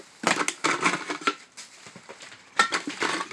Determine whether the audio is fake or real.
real